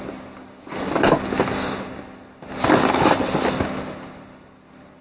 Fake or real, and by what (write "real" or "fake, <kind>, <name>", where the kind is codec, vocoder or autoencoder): real